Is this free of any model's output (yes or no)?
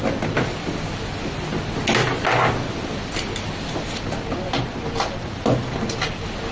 yes